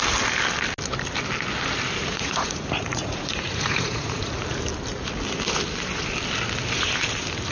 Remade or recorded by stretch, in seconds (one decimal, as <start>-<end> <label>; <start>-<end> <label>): 0.0-2.1 recorded; 2.1-4.3 remade; 4.3-7.5 recorded